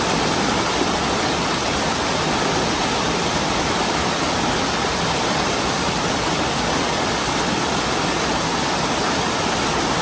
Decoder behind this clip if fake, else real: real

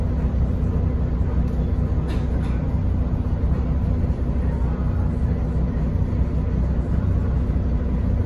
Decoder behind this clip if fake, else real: real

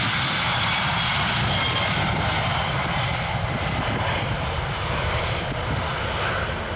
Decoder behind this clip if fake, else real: real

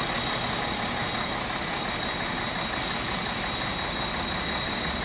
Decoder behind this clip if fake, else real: real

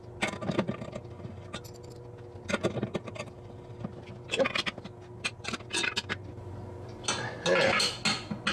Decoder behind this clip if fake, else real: real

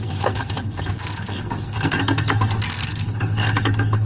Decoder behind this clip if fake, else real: fake, codec, SNAC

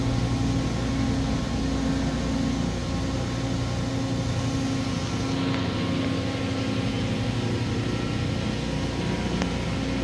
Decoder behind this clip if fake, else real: real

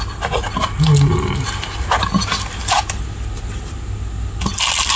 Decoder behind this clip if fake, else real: real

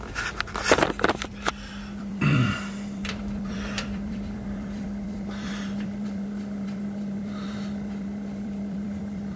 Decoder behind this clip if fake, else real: fake, vocoder, BigVGAN v2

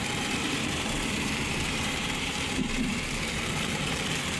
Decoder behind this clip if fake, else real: fake, vocoder, BigVGAN v2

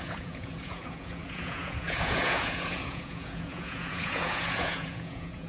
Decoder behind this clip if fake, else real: fake, vocoder, Vocos